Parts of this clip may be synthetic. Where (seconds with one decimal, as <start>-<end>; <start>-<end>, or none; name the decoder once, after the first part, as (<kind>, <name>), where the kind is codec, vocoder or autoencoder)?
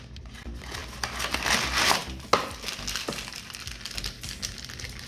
none